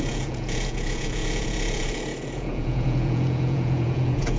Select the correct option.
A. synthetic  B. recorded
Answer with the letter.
A